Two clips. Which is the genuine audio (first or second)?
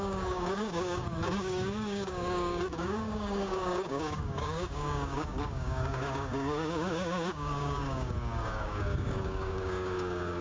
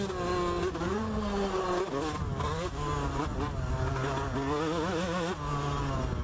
second